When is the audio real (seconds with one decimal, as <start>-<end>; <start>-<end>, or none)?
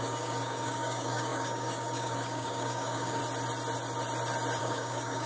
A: 3.2-4.6